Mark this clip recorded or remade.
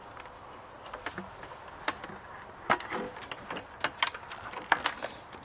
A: recorded